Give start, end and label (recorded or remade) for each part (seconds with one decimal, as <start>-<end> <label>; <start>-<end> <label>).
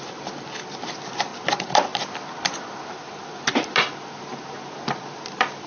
0.0-5.7 recorded